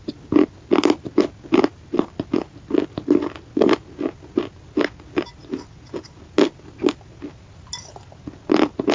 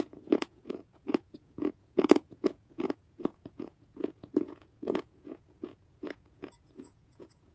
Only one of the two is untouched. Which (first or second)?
first